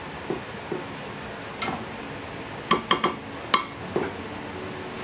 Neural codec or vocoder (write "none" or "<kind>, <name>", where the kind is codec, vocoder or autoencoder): none